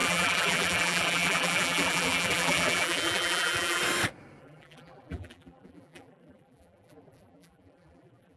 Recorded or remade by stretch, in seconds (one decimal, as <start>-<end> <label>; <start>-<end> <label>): 0.0-3.8 remade; 3.8-4.4 recorded; 4.4-8.4 remade